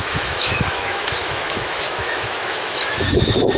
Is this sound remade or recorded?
remade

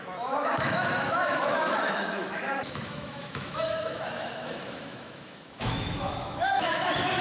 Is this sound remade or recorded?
remade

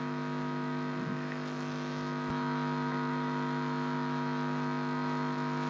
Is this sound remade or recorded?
remade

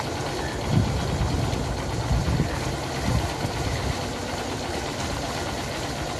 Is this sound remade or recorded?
recorded